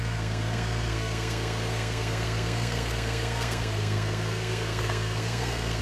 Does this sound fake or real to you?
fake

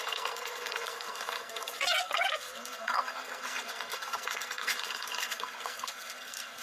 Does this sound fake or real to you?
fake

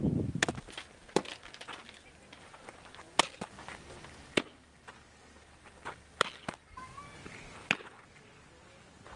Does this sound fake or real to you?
real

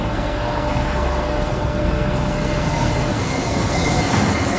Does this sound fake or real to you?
fake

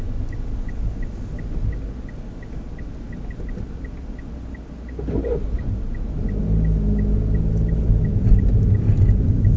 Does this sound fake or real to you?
real